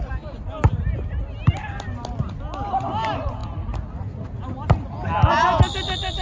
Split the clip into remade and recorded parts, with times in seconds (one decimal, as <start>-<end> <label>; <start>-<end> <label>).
0.0-6.2 recorded